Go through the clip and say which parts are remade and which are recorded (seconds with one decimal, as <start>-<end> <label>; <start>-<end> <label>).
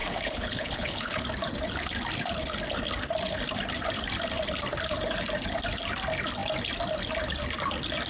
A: 0.0-1.2 remade; 1.2-8.1 recorded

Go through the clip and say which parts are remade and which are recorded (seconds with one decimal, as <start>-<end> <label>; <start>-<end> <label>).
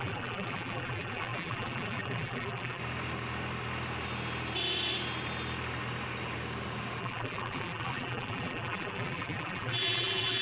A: 0.0-2.8 remade; 2.8-7.0 recorded; 7.0-10.4 remade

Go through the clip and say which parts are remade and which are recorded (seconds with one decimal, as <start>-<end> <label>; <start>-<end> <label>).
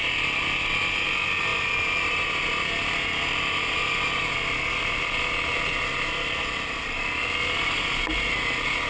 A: 0.0-8.9 recorded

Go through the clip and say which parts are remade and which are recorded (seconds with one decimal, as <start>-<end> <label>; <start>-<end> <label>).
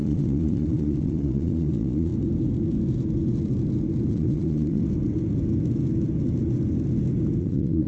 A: 0.0-2.1 remade; 2.1-4.1 recorded; 4.1-4.8 remade; 4.8-7.4 recorded; 7.4-7.9 remade